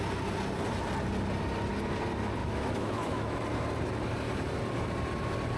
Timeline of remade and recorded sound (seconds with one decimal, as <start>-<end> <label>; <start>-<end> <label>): 0.0-2.4 recorded; 2.4-3.4 remade; 3.4-5.6 recorded